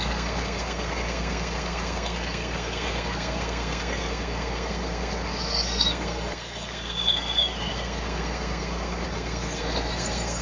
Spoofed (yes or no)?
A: yes